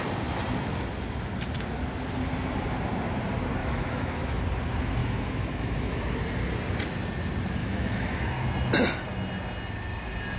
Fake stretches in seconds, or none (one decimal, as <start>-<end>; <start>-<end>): 3.6-4.4; 5.0-6.0; 7.6-8.3